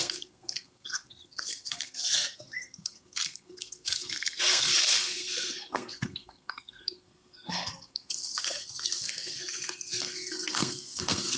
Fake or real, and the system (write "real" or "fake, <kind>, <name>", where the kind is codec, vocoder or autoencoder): fake, codec, SNAC